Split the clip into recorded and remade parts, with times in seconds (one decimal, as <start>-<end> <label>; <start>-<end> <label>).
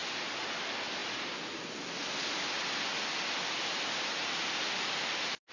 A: 0.0-5.5 recorded